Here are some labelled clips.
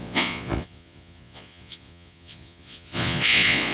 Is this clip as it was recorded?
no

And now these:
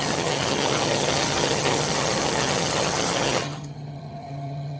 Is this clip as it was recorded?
no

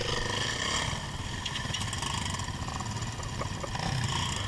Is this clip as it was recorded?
yes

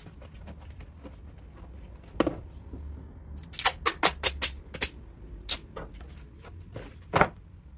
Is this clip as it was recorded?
yes